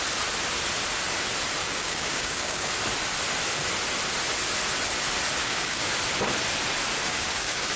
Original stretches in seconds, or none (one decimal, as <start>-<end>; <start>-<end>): 0.0-1.6; 2.7-5.4; 5.9-7.1